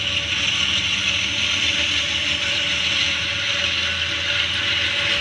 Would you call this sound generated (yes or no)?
no